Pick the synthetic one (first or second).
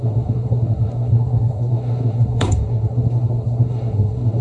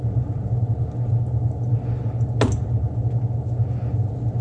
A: first